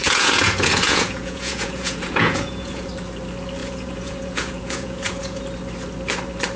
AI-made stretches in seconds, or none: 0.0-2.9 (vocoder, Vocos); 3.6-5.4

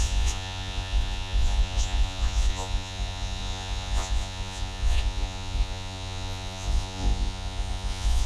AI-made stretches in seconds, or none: 0.0-8.3 (vocoder, Vocos)

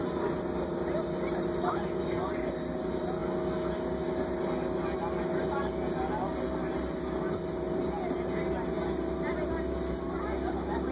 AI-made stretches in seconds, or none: none

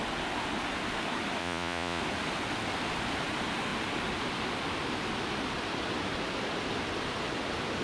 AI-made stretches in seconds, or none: 1.4-2.0 (vocoder, Vocos)